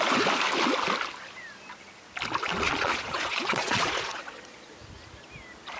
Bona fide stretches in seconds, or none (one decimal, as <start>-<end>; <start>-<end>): 0.0-2.5; 4.7-5.8